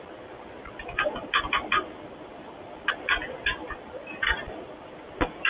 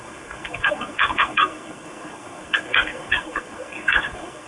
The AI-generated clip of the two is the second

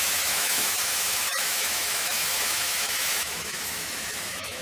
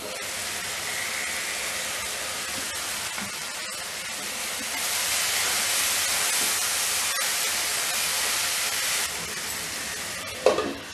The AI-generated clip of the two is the first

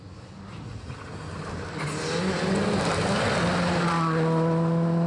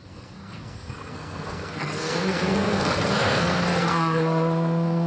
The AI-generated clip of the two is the second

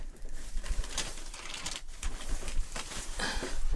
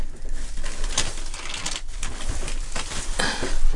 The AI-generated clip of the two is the first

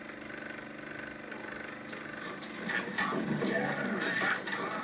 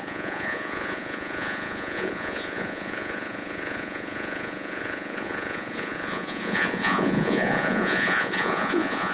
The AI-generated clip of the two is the second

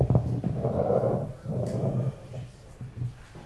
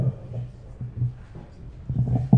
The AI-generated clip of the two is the first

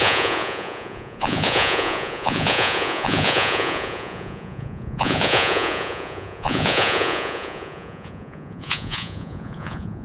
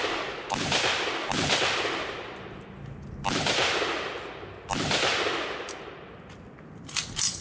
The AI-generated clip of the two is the first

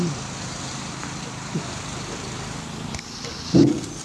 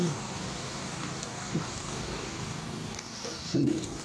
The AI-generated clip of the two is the second